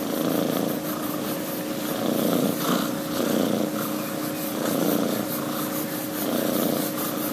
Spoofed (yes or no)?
no